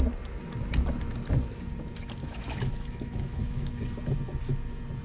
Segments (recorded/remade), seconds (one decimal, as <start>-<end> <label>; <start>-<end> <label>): 0.0-2.2 recorded; 2.2-3.7 remade; 3.7-5.0 recorded